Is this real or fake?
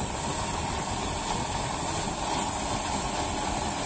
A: real